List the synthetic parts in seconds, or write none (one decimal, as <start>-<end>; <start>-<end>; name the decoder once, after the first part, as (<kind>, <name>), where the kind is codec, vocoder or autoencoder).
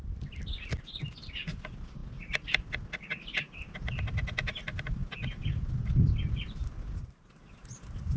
none